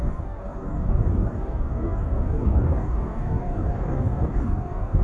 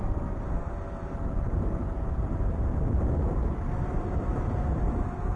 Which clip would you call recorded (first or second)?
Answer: second